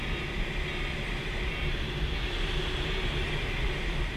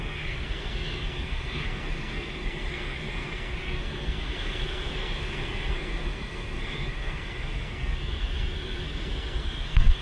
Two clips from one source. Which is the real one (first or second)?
first